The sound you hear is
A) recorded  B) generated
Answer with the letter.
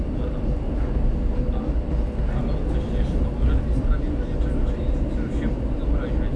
A